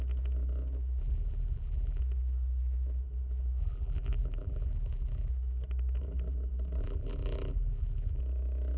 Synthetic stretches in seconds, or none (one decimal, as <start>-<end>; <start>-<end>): 1.0-2.0; 3.6-5.3; 6.8-8.2